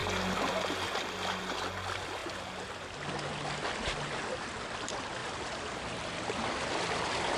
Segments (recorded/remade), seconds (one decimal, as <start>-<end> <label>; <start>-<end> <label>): 0.0-7.4 recorded